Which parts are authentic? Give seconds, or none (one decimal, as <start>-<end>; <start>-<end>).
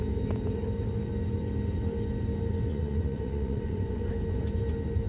0.0-2.7; 4.1-5.1